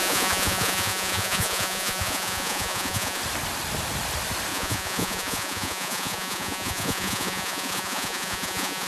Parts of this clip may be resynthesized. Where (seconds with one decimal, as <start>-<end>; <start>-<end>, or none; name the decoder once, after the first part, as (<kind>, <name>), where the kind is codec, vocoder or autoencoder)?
0.0-3.2 (vocoder, Vocos); 4.5-8.9